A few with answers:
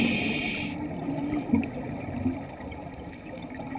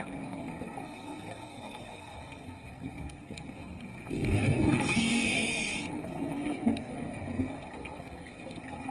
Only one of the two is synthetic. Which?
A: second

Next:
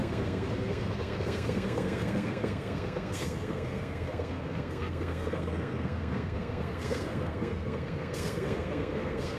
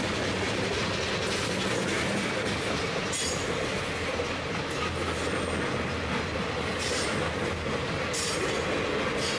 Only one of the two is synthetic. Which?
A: first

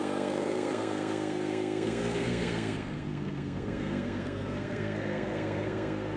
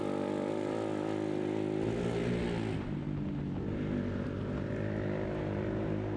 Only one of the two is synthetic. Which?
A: first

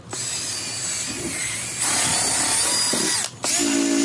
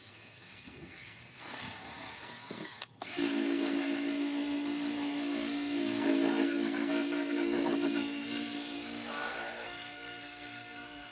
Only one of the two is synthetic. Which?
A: second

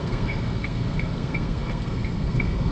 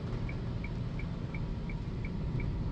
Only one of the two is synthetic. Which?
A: first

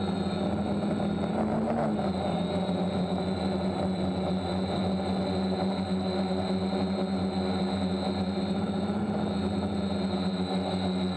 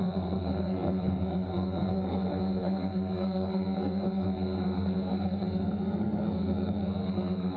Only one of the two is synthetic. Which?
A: second